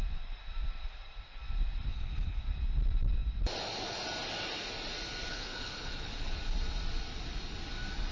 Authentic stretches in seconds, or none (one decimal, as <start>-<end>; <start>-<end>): 0.0-1.9; 2.4-5.3; 6.4-8.1

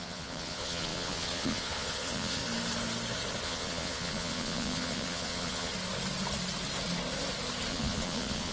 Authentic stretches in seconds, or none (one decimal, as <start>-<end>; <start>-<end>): 2.4-3.4; 5.7-7.7

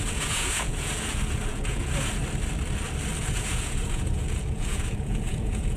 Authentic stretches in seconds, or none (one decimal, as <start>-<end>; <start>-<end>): 2.2-3.2

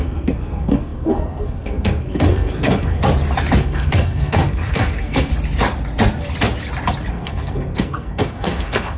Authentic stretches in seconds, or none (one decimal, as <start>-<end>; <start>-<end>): 3.0-3.6; 5.3-7.1